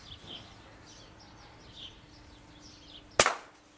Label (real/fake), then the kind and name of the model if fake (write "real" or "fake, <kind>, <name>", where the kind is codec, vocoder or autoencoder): real